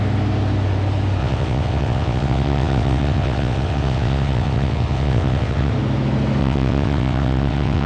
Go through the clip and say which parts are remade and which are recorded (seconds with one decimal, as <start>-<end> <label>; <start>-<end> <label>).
0.0-1.2 recorded; 1.2-5.7 remade; 5.7-6.4 recorded; 6.4-7.9 remade